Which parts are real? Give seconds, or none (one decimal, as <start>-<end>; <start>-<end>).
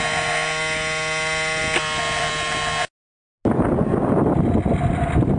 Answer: 0.0-5.4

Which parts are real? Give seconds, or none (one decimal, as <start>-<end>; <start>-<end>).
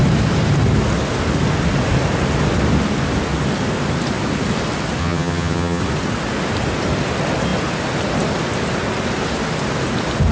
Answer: 0.0-5.0; 5.8-10.3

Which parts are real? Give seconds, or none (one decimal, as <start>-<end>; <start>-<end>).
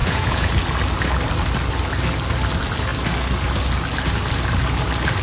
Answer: 0.5-5.2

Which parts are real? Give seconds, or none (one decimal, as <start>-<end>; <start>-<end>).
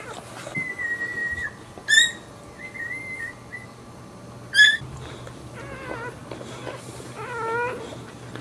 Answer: 0.0-8.4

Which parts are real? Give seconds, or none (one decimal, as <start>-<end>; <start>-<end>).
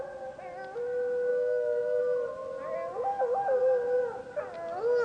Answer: 0.0-1.3; 2.0-5.0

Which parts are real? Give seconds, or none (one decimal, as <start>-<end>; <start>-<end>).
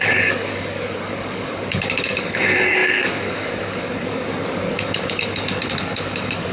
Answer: none